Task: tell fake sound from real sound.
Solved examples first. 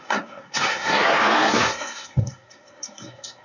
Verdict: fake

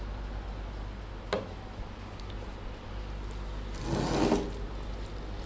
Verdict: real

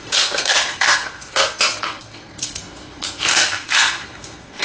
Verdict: fake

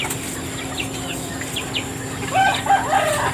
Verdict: real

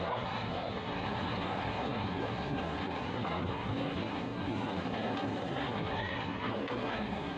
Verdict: fake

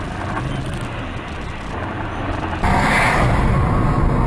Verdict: real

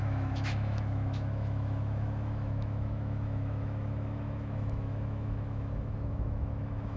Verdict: fake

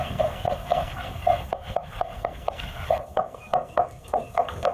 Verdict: fake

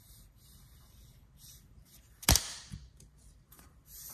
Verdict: fake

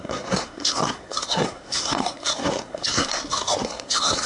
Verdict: fake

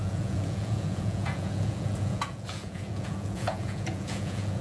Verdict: fake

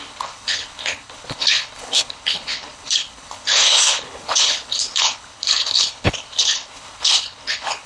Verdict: fake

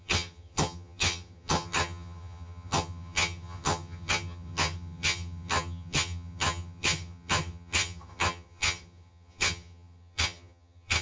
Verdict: fake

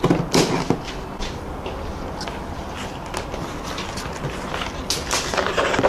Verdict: real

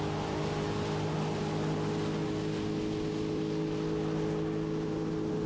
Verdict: real